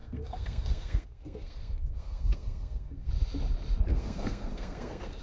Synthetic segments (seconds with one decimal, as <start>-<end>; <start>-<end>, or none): 0.0-3.1; 3.9-5.2